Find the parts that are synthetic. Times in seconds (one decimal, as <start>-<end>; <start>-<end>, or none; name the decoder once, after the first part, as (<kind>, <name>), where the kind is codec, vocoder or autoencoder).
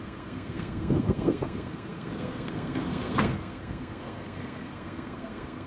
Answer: 0.0-5.7 (codec, SNAC)